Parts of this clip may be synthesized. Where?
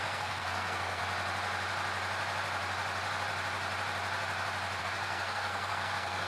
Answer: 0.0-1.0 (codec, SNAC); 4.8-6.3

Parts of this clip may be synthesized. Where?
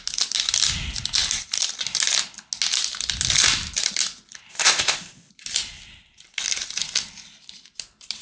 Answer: 4.5-5.3 (codec, ZipCodec)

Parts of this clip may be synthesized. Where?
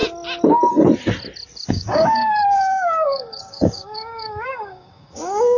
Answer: 1.7-5.6 (codec, DAC)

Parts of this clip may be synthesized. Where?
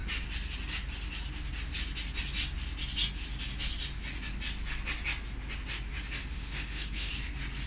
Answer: 6.2-7.1 (autoencoder, DAC-VAE)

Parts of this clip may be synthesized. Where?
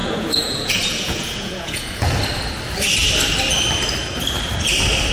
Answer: 0.0-2.2 (vocoder, Vocos)